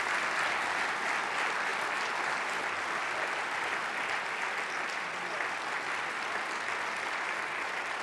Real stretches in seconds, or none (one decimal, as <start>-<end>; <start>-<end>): 0.0-8.0